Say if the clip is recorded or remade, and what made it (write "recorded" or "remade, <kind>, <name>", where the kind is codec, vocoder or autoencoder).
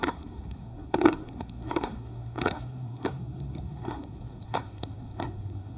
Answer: remade, codec, SNAC